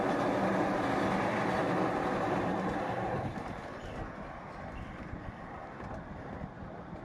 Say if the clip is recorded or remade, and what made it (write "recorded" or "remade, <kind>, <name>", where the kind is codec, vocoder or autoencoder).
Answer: recorded